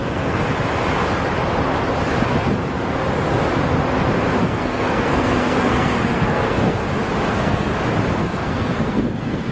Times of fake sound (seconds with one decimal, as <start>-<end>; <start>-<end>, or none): 0.0-0.4; 4.4-6.8; 7.3-7.7; 8.2-9.5